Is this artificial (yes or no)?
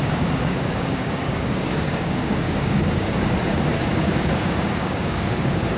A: yes